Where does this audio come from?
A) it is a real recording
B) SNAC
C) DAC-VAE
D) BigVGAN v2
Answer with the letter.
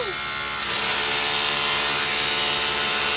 A